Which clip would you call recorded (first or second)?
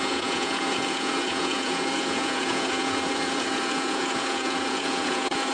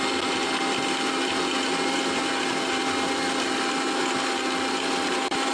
second